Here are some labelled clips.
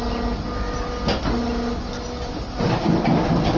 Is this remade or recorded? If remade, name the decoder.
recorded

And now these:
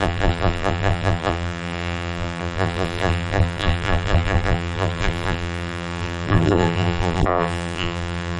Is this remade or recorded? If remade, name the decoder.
remade, vocoder, BigVGAN v2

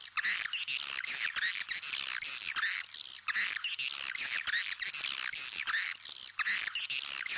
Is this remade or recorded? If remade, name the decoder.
recorded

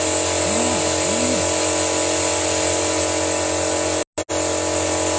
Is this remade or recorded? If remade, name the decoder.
recorded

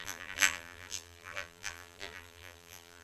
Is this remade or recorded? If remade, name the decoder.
remade, vocoder, BigVGAN v2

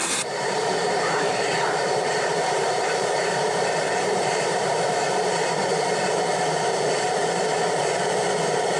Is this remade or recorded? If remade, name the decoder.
remade, vocoder, BigVGAN v2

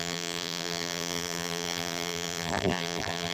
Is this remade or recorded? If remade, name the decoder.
remade, vocoder, BigVGAN v2